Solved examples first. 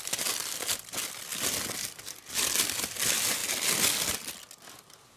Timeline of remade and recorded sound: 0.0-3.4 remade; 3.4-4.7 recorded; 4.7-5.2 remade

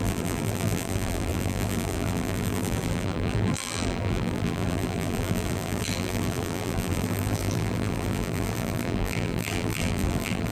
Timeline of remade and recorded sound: 0.0-10.5 remade

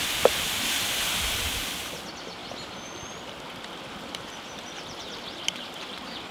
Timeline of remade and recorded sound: 0.0-2.4 remade; 2.4-3.5 recorded; 3.5-6.3 remade

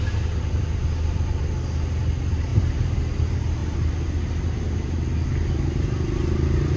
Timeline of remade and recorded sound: 0.0-2.5 recorded; 2.5-3.0 remade; 3.0-6.8 recorded

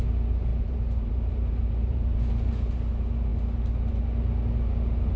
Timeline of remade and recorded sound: 0.0-0.5 recorded; 0.5-2.5 remade; 2.5-5.2 recorded

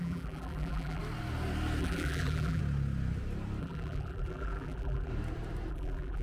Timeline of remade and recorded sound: 0.0-1.0 remade; 1.0-1.8 recorded; 1.8-2.6 remade; 2.6-3.6 recorded; 3.6-5.1 remade; 5.1-5.7 recorded; 5.7-6.2 remade